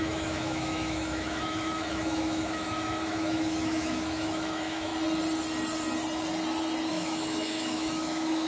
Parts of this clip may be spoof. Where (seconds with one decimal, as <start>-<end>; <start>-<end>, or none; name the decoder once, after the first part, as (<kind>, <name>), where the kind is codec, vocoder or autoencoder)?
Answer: 0.0-4.9 (autoencoder, DAC-VAE); 6.9-8.5